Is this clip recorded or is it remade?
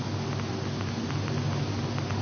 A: recorded